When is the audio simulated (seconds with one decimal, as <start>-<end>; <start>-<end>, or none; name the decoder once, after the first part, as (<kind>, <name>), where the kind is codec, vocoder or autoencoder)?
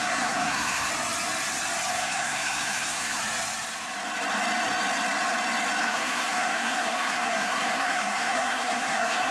0.0-0.9 (codec, SNAC); 1.9-3.2; 5.8-9.3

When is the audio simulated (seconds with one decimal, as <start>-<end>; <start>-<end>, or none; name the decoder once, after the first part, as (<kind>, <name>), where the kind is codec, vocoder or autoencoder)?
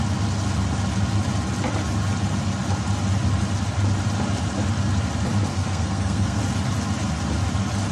5.5-6.4 (codec, SNAC)